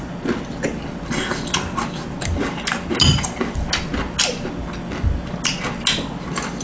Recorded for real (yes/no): yes